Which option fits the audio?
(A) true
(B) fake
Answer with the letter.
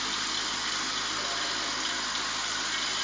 A